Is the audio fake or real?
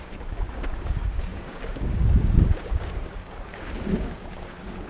fake